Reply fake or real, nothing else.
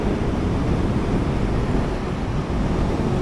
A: real